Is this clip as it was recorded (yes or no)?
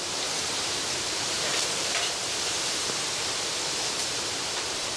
no